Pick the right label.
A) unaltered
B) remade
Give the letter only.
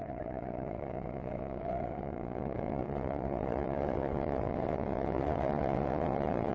B